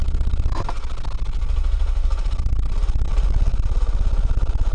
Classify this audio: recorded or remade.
recorded